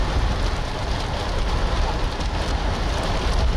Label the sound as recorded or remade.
remade